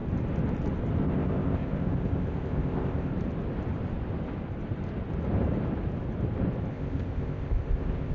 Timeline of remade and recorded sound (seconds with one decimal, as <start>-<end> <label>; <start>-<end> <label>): 0.0-1.0 recorded; 1.0-3.1 remade; 3.1-6.7 recorded; 6.7-8.1 remade